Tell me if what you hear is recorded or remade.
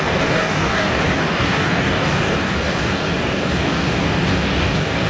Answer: remade